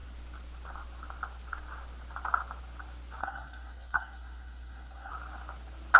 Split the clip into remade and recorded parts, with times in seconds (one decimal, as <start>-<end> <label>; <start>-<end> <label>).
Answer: 0.0-3.2 recorded; 3.2-5.1 remade; 5.1-6.0 recorded